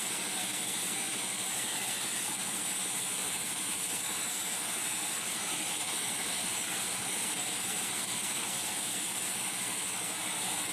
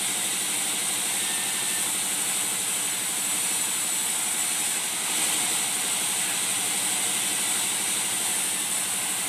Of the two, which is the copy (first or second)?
first